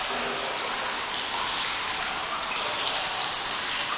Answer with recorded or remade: recorded